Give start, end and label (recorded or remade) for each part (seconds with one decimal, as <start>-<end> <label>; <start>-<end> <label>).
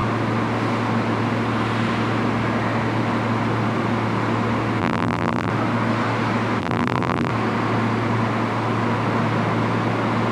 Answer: 0.0-4.8 recorded; 4.8-5.5 remade; 5.5-6.6 recorded; 6.6-7.3 remade; 7.3-10.3 recorded